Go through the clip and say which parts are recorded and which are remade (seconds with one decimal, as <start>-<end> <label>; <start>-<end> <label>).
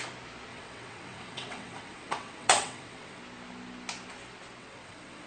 0.0-0.5 recorded; 0.5-3.2 remade; 3.2-4.6 recorded; 4.6-5.3 remade